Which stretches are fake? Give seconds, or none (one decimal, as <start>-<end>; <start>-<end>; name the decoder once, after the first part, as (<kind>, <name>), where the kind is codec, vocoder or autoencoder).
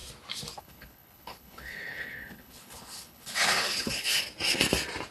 0.6-4.1 (codec, HILCodec)